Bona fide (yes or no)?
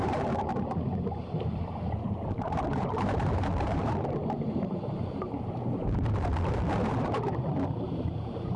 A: no